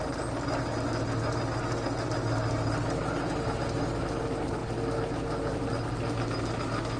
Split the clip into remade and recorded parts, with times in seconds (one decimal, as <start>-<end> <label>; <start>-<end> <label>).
0.0-7.0 recorded